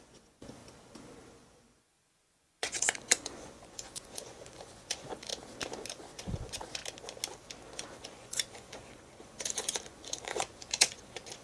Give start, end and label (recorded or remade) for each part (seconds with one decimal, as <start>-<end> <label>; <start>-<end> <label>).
0.0-0.6 remade; 0.6-1.3 recorded; 1.3-5.3 remade; 5.3-5.9 recorded; 5.9-6.8 remade; 6.8-7.7 recorded; 7.7-11.4 remade